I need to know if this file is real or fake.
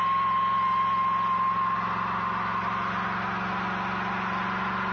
real